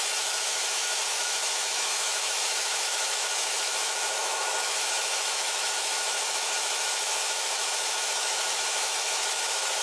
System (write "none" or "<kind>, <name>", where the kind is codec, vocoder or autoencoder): autoencoder, DAC-VAE